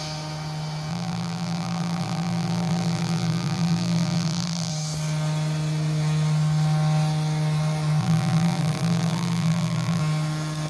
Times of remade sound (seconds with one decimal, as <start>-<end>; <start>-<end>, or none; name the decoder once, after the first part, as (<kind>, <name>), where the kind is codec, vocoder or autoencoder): 0.9-4.7 (vocoder, BigVGAN v2); 8.0-10.0

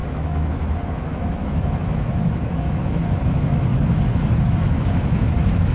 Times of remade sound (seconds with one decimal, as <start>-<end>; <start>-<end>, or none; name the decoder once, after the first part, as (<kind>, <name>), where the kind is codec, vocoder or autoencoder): 0.0-3.7 (autoencoder, DAC-VAE); 4.4-5.7

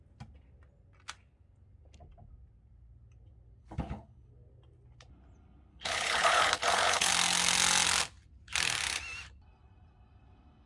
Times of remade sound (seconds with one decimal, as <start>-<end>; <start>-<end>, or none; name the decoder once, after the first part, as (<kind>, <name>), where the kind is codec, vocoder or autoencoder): 3.6-4.3 (codec, HILCodec); 5.7-7.1

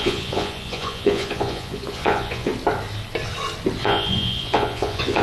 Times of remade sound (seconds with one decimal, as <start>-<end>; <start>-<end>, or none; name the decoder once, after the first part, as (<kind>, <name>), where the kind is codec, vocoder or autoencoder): 0.0-2.5 (vocoder, Vocos); 3.8-5.2

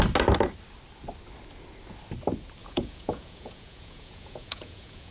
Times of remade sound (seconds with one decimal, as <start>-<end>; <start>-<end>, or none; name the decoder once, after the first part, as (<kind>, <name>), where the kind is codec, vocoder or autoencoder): 2.6-5.1 (vocoder, Vocos)

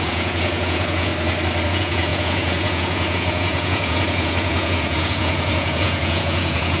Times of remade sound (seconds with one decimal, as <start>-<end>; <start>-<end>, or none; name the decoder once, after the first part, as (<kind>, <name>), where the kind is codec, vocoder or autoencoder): 0.0-1.1 (vocoder, Vocos); 1.7-6.8